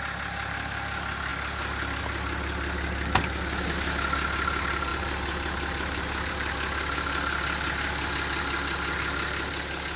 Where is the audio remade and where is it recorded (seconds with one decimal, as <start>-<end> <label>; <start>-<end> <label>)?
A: 0.0-4.9 recorded; 4.9-6.3 remade; 6.3-10.0 recorded